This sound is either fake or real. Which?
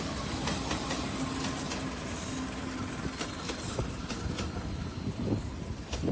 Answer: real